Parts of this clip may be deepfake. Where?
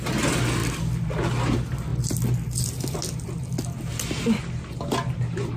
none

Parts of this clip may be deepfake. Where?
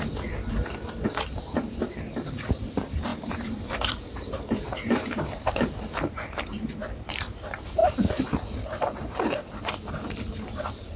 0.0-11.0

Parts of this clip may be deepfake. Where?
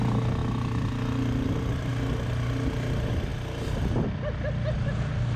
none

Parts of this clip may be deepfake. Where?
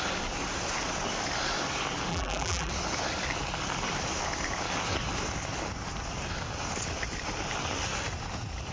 2.1-2.7